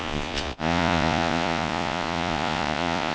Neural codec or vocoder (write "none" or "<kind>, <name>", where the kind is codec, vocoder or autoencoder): vocoder, Vocos